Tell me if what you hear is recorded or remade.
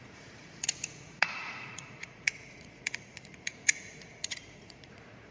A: remade